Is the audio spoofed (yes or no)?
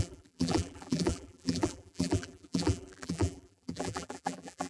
yes